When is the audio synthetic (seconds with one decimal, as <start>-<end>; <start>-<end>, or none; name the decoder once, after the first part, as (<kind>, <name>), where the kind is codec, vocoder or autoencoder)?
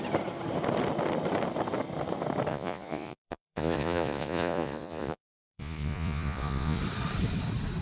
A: 2.5-6.8 (vocoder, Vocos)